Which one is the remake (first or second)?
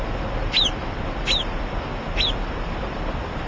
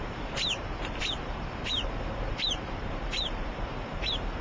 second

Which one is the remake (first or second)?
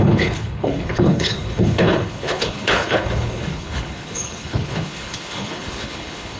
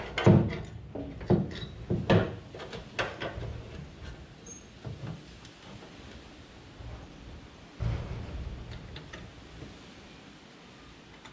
first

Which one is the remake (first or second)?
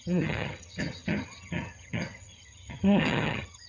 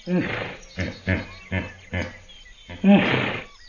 first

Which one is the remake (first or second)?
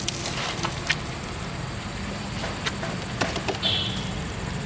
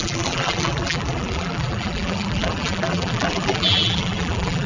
second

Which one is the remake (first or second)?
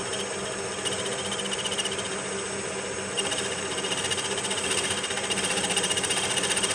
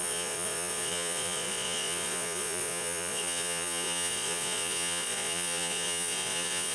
second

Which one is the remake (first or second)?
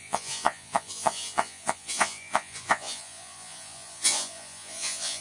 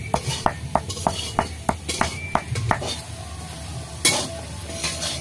first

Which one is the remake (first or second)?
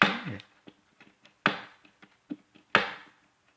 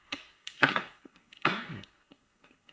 second